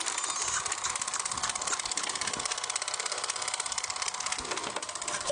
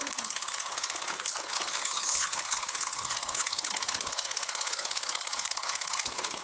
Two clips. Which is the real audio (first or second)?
first